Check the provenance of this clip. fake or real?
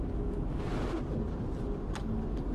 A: real